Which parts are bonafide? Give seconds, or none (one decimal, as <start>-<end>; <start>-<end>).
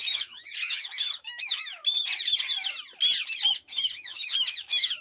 1.8-3.5